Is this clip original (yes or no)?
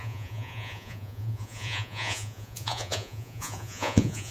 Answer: no